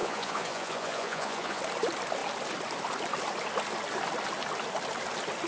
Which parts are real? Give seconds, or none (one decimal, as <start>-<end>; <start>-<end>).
1.6-5.5